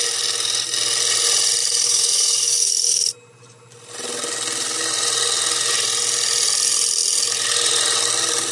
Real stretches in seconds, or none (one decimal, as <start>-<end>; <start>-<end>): 0.0-1.6; 3.1-8.5